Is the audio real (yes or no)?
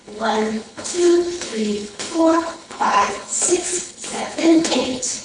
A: no